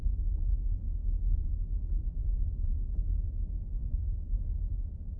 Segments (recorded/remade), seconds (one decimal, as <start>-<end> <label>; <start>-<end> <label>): 0.0-3.8 recorded; 3.8-4.5 remade; 4.5-5.2 recorded